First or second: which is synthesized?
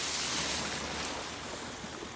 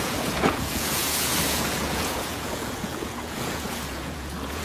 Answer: second